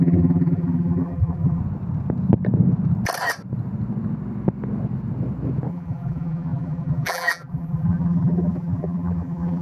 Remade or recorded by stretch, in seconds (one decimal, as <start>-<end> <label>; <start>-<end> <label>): 0.0-1.6 remade; 1.6-5.7 recorded; 5.7-9.6 remade